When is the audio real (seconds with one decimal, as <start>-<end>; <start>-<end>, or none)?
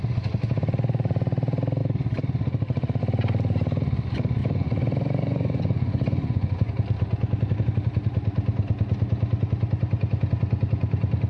0.0-4.4; 6.7-11.3